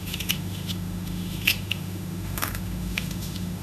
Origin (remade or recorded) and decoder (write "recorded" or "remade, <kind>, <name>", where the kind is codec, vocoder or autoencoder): remade, autoencoder, DAC-VAE